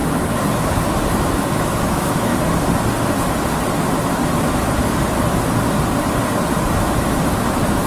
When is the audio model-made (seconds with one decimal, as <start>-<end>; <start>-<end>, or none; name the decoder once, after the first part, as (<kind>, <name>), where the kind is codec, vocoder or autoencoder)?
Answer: 1.1-2.3 (autoencoder, DAC-VAE); 6.8-7.9